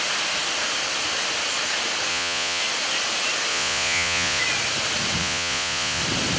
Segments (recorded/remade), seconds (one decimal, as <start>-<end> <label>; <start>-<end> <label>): 0.0-2.1 recorded; 2.1-2.6 remade; 2.6-3.5 recorded; 3.5-4.4 remade; 4.4-5.2 recorded; 5.2-6.0 remade; 6.0-6.4 recorded